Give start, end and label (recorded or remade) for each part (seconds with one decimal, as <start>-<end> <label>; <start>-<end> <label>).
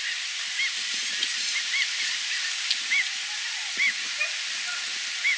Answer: 0.0-5.4 recorded